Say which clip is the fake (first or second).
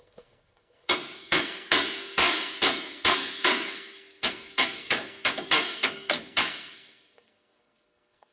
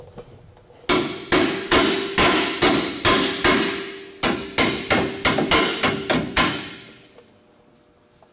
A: first